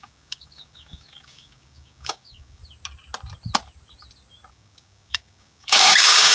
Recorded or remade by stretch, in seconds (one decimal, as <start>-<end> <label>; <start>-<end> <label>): 0.0-2.6 remade; 2.6-4.5 recorded; 4.5-6.3 remade